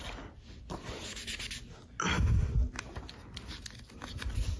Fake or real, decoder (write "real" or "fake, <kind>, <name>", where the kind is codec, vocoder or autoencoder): real